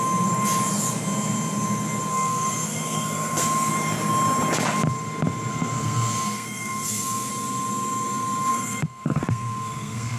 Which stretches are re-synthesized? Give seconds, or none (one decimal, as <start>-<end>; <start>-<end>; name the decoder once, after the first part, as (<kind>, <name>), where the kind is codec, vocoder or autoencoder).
2.1-3.7 (codec, SNAC); 5.5-7.3; 8.5-10.2